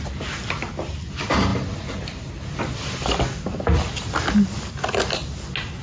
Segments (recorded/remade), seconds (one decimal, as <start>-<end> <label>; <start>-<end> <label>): 0.0-5.8 recorded